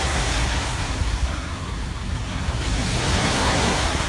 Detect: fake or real fake